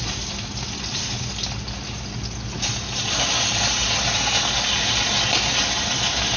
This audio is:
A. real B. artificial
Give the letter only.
A